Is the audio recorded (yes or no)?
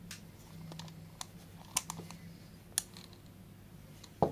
yes